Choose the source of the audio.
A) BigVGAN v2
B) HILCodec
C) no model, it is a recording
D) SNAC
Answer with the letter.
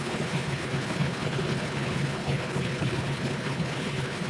B